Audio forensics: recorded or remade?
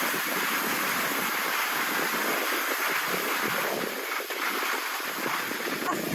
remade